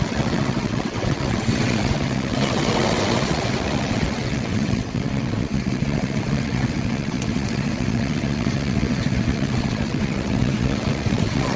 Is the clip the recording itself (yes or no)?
no